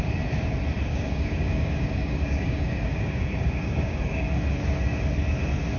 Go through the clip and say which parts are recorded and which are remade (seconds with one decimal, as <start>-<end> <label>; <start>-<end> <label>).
0.0-0.9 recorded; 0.9-4.4 remade; 4.4-5.8 recorded